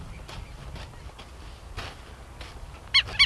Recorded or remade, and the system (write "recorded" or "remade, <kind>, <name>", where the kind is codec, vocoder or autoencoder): recorded